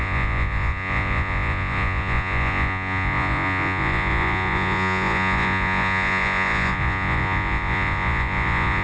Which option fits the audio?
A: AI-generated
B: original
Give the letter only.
A